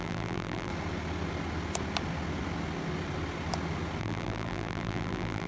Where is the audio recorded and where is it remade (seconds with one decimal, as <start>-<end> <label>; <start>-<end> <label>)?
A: 0.0-0.7 remade; 0.7-4.0 recorded; 4.0-5.5 remade